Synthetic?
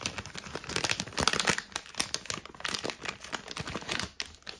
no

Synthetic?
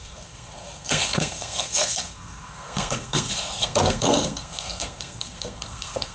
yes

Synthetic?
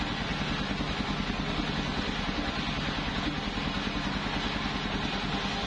no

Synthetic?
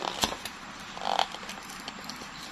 yes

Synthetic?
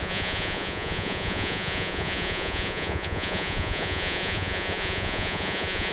yes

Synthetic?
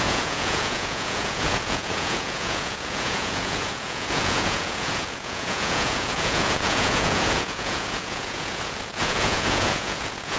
yes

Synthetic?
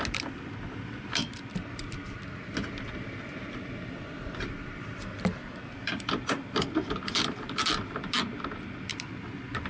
no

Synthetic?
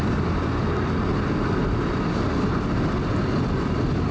no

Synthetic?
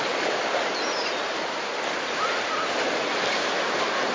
no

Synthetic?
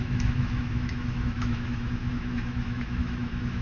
yes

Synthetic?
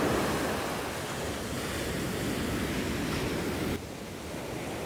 no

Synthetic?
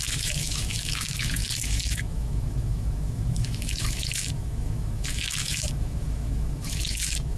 yes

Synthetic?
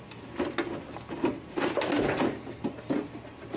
no